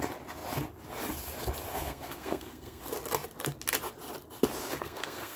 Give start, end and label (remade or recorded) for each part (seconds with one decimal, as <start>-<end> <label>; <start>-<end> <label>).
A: 0.0-1.7 recorded; 1.7-2.8 remade; 2.8-4.6 recorded; 4.6-5.4 remade